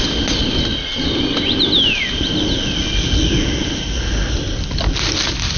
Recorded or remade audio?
recorded